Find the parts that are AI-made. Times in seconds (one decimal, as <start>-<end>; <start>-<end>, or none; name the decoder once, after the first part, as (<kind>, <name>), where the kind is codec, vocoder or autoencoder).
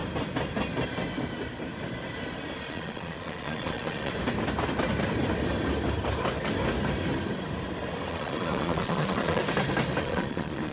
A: 2.7-4.1 (vocoder, Vocos); 8.1-9.4; 10.0-10.7